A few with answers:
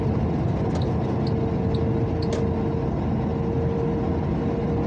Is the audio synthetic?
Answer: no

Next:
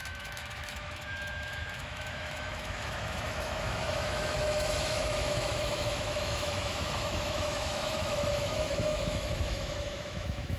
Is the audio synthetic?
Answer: yes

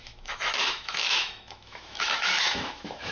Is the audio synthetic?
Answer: yes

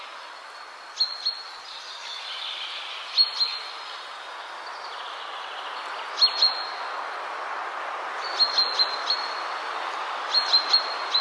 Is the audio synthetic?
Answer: no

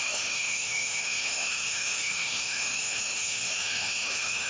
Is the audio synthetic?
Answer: yes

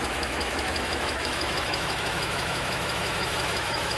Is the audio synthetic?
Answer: yes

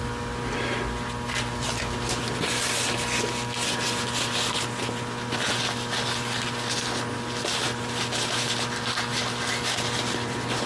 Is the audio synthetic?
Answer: no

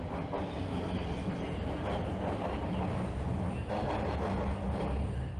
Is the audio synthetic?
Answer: no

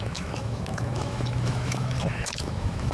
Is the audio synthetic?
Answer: yes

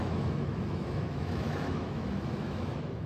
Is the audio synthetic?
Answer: yes